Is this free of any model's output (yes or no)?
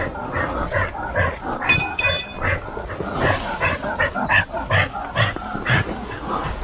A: yes